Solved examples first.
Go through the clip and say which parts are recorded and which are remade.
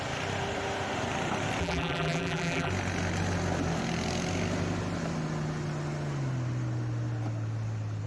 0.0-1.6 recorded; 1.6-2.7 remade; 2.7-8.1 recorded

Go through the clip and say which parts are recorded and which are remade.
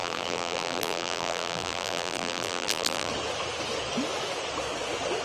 0.0-3.1 remade; 3.1-5.2 recorded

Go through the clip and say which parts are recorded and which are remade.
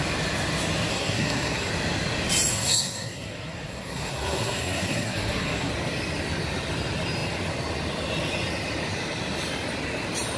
0.0-0.9 recorded; 0.9-1.7 remade; 1.7-2.5 recorded; 2.5-5.7 remade; 5.7-10.4 recorded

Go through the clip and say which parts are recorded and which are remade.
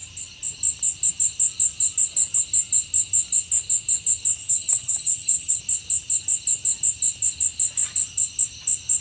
0.0-4.4 recorded; 4.4-5.6 remade; 5.6-9.0 recorded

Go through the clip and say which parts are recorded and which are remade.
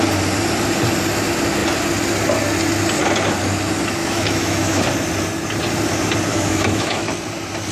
0.0-4.0 recorded; 4.0-4.8 remade; 4.8-6.3 recorded; 6.3-7.1 remade; 7.1-7.7 recorded